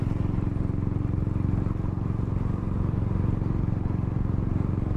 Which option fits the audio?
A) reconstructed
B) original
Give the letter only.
B